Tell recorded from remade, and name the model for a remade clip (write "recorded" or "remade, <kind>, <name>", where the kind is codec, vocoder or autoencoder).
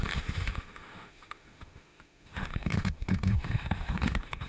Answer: remade, autoencoder, DAC-VAE